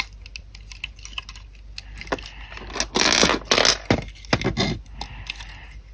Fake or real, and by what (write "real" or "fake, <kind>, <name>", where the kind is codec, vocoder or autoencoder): real